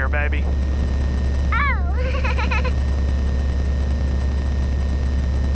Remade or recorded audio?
recorded